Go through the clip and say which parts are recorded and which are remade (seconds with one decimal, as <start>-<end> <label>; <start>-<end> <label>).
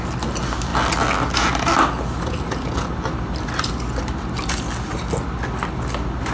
0.0-6.3 recorded